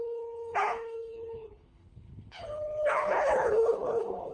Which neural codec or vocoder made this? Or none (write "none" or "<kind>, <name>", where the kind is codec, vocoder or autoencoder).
codec, HILCodec